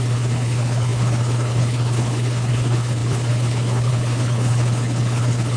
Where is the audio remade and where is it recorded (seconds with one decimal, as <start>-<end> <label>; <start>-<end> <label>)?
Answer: 0.0-5.6 remade